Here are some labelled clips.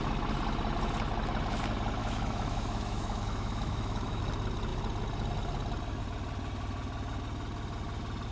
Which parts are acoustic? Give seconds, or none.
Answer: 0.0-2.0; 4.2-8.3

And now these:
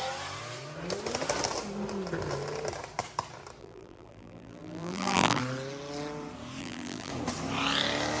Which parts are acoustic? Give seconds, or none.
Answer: 0.0-3.6; 5.4-6.6; 7.1-8.2